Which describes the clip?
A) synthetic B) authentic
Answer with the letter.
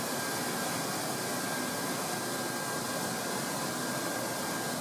B